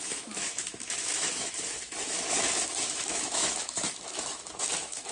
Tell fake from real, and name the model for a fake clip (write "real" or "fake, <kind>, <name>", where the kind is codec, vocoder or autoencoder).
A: fake, autoencoder, DAC-VAE